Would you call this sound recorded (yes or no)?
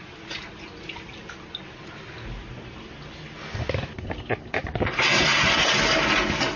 yes